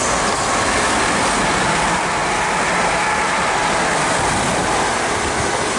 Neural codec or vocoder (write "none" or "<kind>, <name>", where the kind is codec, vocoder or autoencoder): none